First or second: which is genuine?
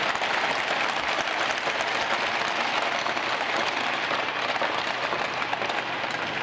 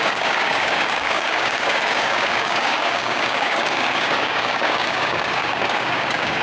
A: first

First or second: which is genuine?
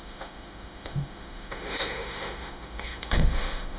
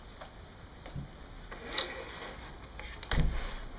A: second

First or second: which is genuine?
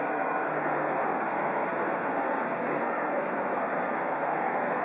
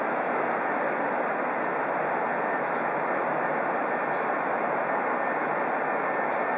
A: second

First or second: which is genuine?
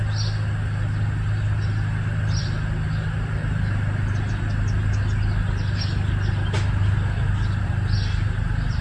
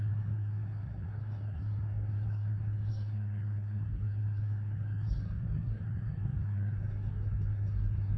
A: first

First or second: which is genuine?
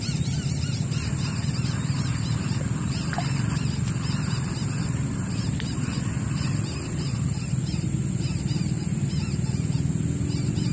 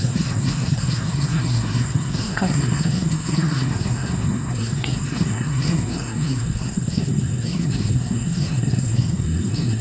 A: first